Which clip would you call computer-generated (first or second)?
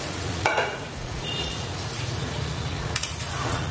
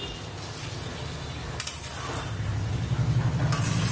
first